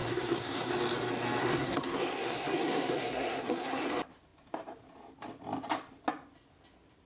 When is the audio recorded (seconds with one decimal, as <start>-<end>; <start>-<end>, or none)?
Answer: 0.7-1.4; 3.9-7.1